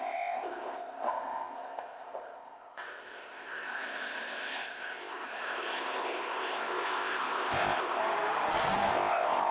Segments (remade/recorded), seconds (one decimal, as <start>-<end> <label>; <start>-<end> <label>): 0.0-8.0 remade; 8.0-8.9 recorded; 8.9-9.5 remade